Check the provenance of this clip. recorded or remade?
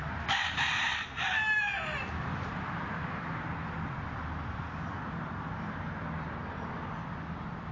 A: recorded